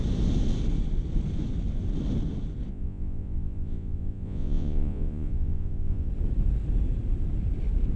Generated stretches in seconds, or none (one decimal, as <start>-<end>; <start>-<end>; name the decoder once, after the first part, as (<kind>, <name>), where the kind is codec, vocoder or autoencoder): 2.7-6.1 (vocoder, Vocos)